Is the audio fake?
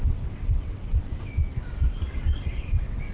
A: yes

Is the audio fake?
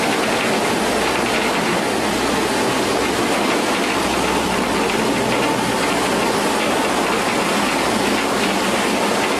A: no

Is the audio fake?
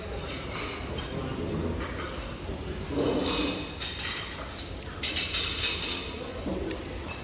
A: no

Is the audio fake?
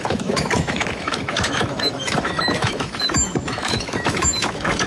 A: yes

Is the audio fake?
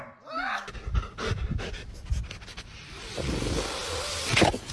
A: no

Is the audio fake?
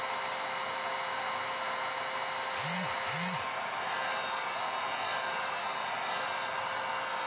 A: no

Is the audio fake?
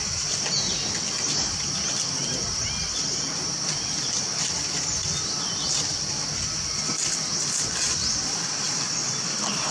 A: no